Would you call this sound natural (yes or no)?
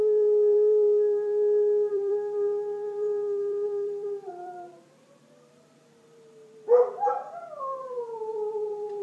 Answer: no